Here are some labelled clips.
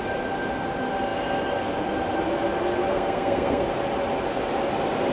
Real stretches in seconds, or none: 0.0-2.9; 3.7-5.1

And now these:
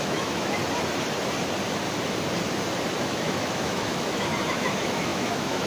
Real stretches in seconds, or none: 0.6-3.0

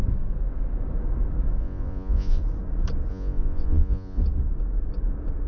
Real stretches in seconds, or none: 0.0-1.6; 2.4-3.1; 4.2-5.5

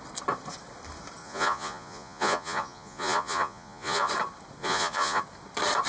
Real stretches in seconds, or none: 0.0-1.2; 4.1-4.6; 5.2-5.9

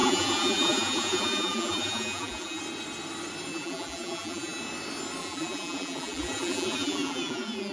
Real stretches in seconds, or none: 2.6-3.5; 4.6-5.2

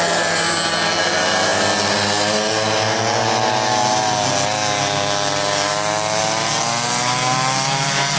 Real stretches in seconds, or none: 0.0-8.2

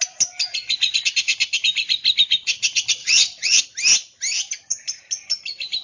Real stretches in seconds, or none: 0.0-3.0; 3.6-5.8